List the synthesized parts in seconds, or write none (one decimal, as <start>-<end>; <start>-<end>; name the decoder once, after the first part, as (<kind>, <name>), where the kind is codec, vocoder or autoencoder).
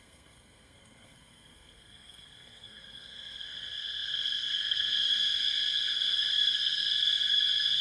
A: 0.0-7.8 (codec, SNAC)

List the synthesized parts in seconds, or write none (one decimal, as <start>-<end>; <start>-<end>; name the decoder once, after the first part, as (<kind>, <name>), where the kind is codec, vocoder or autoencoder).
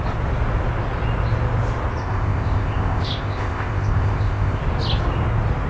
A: 2.0-4.6 (codec, ZipCodec)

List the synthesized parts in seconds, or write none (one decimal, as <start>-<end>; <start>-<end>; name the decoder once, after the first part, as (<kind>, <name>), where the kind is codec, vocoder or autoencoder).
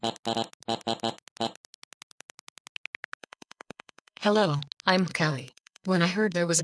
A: 3.2-4.6 (codec, SNAC); 5.1-6.6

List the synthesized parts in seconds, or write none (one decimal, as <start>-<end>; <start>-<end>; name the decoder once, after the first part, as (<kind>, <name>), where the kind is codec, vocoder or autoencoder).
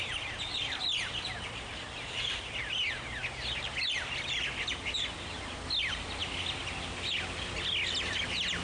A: none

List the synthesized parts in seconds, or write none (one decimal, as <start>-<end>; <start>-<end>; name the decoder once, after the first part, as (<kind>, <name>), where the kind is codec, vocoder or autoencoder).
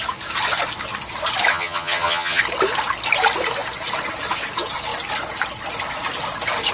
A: 1.5-2.4 (vocoder, HiFi-GAN)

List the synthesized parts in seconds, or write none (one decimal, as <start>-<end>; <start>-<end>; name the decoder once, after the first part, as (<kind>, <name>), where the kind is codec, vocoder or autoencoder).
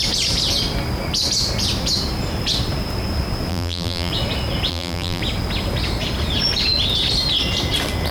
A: 3.5-4.1 (vocoder, BigVGAN v2); 4.7-5.2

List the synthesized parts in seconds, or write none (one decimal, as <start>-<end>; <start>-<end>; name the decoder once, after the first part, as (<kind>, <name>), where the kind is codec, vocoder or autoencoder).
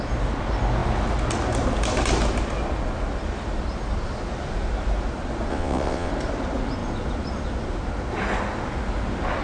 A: 5.5-6.1 (vocoder, WaveNeXt)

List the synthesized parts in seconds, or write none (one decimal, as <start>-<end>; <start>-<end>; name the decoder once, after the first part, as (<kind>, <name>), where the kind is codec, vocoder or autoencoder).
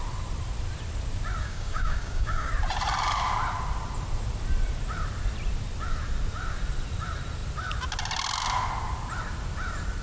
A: 1.4-2.5 (codec, DAC)